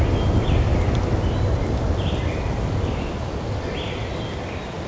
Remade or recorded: recorded